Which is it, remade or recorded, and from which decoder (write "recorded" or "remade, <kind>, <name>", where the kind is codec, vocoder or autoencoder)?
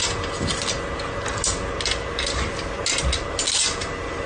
recorded